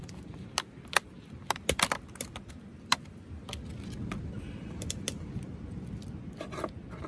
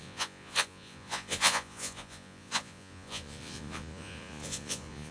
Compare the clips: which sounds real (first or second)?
first